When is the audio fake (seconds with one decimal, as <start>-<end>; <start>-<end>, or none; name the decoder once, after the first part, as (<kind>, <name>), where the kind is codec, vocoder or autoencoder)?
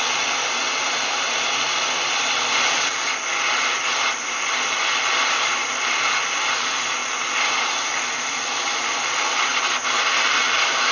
none